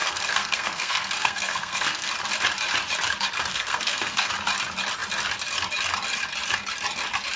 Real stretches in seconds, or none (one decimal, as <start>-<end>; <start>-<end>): 2.1-3.5; 4.3-7.4